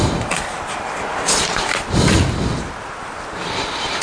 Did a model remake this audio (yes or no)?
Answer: no